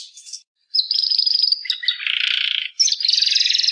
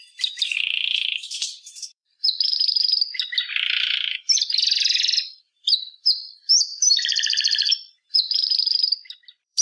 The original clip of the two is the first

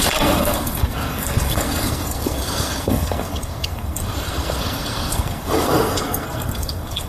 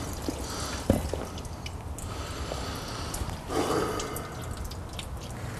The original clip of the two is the second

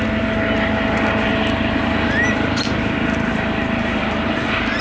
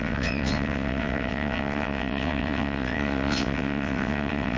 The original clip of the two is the first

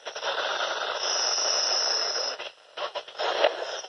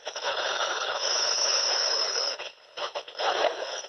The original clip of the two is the first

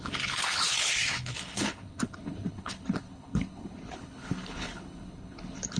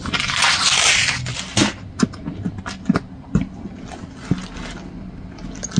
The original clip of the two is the second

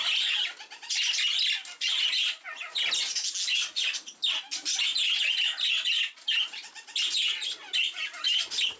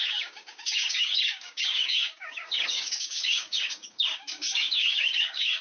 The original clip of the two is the first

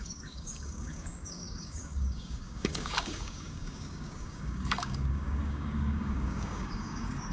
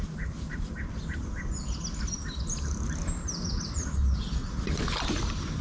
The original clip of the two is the second